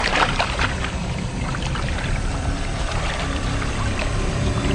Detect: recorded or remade remade